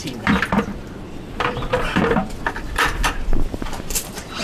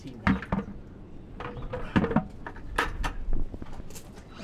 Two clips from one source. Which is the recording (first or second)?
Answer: second